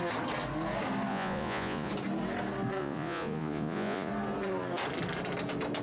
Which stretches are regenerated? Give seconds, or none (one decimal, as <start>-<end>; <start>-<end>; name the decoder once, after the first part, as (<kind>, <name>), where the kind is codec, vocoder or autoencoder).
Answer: 1.1-1.9 (vocoder, Vocos); 2.8-4.1

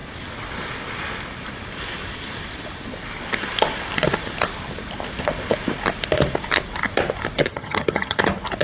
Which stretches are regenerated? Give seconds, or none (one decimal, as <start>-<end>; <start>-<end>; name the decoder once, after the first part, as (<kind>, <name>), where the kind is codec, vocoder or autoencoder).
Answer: 7.5-8.2 (vocoder, HiFi-GAN)

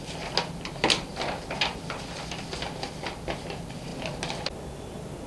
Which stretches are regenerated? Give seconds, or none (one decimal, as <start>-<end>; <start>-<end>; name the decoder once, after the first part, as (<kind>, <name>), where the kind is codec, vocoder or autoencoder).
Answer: none

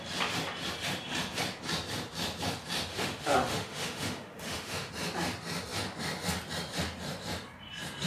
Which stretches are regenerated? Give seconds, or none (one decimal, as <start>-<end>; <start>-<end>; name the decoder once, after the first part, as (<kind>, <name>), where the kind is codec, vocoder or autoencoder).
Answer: 2.9-4.9 (autoencoder, DAC-VAE)

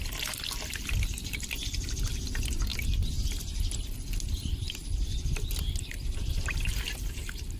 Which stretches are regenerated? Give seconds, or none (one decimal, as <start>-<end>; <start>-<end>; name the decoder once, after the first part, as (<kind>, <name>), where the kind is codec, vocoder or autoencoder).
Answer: none

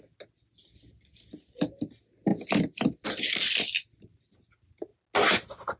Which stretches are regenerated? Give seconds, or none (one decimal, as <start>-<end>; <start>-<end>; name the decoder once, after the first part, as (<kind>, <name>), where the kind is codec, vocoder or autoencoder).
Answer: 2.3-4.2 (vocoder, BigVGAN v2)